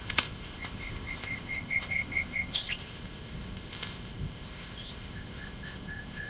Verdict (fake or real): fake